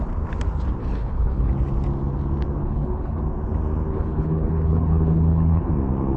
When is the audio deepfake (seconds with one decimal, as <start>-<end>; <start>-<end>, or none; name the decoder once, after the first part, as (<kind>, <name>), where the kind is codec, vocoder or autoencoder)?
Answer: 0.8-1.5 (codec, HILCodec); 2.6-3.2; 3.9-5.7